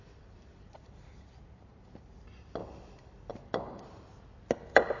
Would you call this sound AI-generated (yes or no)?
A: no